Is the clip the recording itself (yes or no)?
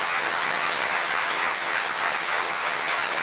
no